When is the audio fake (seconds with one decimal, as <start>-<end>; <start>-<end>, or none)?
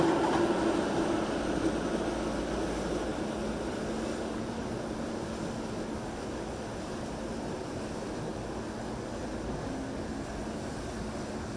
none